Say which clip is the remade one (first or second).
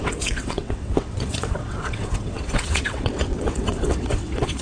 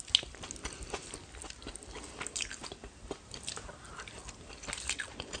first